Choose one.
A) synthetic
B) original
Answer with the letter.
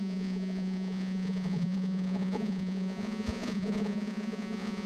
A